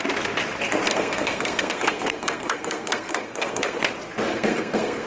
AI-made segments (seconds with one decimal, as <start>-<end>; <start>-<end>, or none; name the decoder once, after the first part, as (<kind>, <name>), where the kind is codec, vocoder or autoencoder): 0.9-3.8 (codec, SNAC); 4.3-5.1